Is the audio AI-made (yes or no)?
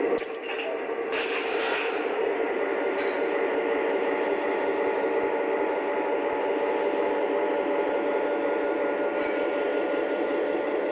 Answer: yes